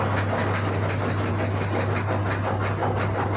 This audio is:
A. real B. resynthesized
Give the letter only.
A